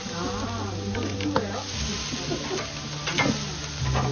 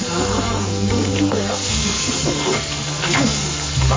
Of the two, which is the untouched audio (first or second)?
first